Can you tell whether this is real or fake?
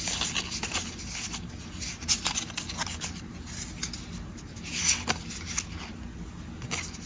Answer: real